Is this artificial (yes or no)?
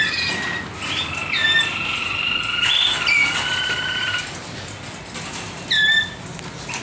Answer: no